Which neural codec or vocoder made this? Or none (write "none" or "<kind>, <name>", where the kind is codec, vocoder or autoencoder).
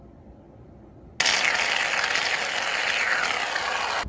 none